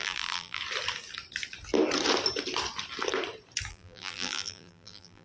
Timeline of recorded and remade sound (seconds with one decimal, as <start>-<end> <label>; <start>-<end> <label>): 0.0-0.6 remade; 0.6-3.7 recorded; 3.7-5.2 remade